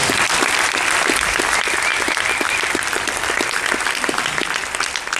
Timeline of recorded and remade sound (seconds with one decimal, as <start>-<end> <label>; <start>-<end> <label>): 0.0-5.2 recorded